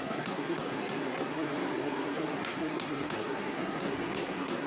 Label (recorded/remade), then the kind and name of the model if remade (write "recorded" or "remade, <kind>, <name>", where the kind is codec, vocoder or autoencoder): remade, codec, SNAC